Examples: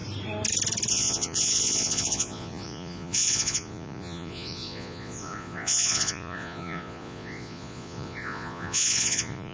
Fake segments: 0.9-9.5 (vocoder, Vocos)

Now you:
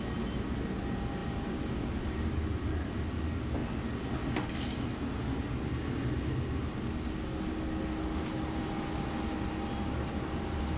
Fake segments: none

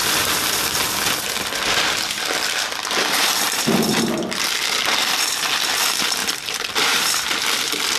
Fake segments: 6.2-8.0 (vocoder, BigVGAN v2)